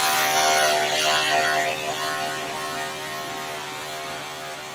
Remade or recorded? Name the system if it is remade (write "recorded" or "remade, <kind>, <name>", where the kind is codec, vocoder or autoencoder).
recorded